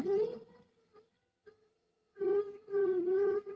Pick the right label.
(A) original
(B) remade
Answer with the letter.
B